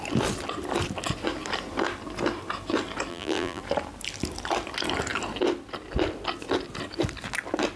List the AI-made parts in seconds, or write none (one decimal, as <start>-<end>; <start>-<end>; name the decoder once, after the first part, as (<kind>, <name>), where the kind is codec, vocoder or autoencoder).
3.1-3.6 (vocoder, BigVGAN v2)